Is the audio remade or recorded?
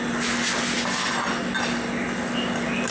recorded